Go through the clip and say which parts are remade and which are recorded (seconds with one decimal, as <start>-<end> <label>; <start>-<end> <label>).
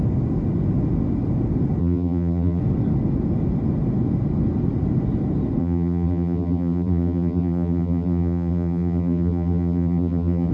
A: 0.0-1.8 recorded; 1.8-2.6 remade; 2.6-5.6 recorded; 5.6-10.5 remade